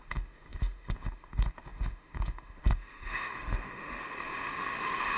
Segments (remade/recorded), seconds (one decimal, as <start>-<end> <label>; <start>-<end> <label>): 0.0-5.2 remade